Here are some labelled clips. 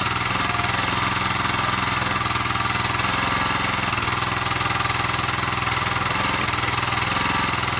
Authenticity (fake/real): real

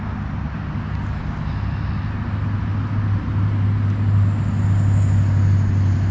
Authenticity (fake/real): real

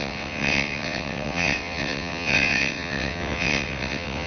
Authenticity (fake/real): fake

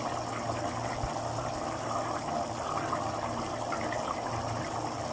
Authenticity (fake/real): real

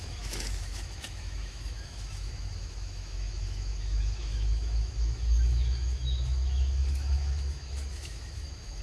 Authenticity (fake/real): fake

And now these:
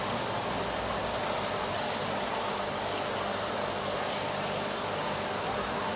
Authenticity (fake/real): real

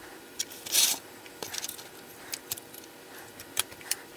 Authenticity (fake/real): fake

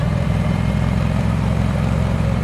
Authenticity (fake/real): fake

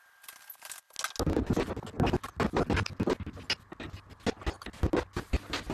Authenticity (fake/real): real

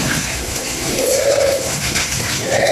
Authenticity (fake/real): fake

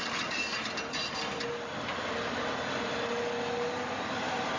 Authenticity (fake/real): real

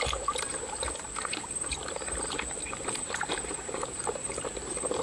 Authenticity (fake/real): fake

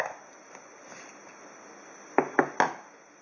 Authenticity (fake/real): real